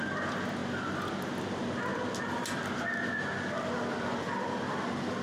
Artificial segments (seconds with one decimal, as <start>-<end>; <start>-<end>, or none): none

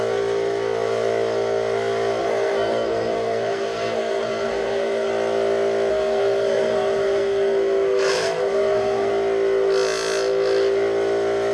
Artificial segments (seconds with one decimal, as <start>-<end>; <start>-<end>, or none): 2.2-5.1; 5.9-9.1